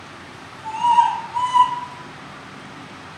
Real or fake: fake